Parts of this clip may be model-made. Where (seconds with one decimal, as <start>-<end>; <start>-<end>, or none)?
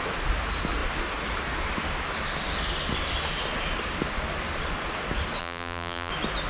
5.4-6.1